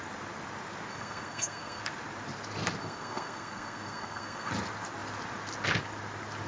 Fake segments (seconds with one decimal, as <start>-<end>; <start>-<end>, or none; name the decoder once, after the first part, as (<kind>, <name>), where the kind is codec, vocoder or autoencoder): 0.9-1.8 (codec, SNAC); 2.8-4.5

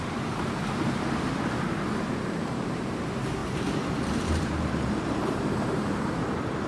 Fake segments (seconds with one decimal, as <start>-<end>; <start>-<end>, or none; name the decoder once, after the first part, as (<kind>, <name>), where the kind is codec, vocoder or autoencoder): 0.0-6.7 (vocoder, BigVGAN v2)